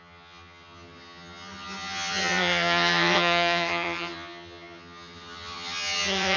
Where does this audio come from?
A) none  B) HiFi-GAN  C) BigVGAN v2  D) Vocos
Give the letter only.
B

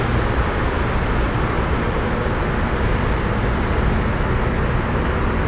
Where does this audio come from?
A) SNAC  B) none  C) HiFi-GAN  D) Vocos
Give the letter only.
B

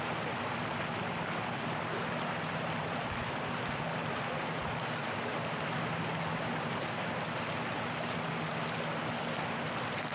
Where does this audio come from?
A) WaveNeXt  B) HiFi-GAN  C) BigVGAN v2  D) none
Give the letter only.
D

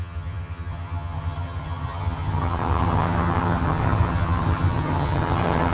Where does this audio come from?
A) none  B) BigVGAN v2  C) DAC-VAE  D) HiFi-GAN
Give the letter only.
D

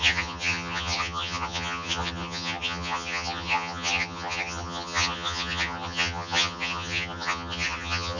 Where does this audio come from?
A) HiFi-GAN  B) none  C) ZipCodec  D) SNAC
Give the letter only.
A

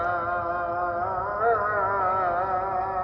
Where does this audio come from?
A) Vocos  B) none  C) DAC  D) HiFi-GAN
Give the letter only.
B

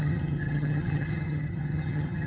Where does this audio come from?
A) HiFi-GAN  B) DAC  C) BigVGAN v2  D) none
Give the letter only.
A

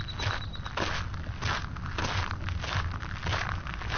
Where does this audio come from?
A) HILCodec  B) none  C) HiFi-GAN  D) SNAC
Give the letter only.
B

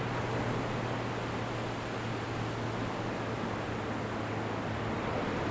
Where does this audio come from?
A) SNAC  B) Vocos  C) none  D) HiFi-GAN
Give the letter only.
C